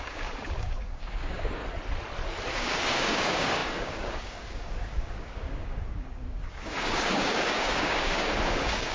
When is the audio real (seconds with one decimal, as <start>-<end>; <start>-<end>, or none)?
1.6-2.5